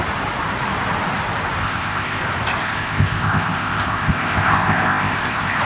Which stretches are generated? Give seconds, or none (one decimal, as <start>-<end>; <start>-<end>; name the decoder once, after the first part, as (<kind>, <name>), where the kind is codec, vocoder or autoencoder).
1.6-2.2 (codec, ZipCodec); 2.6-5.6